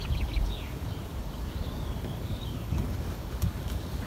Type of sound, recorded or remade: remade